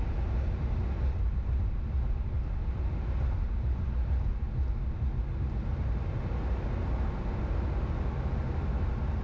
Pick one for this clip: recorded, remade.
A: recorded